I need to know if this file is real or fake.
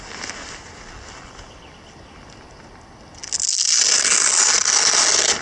real